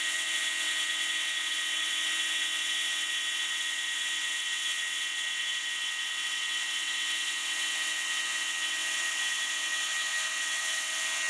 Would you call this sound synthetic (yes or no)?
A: yes